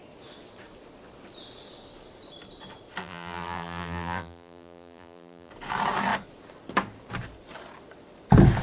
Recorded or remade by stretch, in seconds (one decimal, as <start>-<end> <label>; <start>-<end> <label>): 0.0-3.0 recorded; 3.0-5.5 remade; 5.5-8.6 recorded